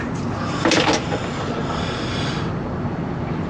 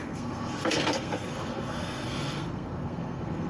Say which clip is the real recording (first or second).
first